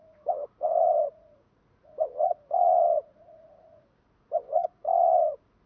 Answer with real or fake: fake